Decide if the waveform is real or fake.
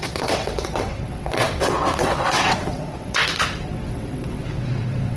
fake